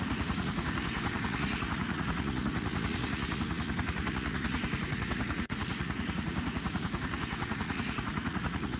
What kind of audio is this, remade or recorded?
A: remade